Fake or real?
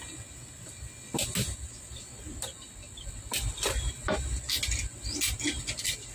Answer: real